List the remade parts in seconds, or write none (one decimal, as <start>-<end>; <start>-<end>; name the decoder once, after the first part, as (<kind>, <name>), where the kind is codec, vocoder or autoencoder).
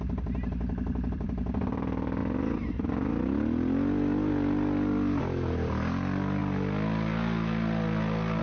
0.0-2.2 (vocoder, BigVGAN v2); 5.2-6.4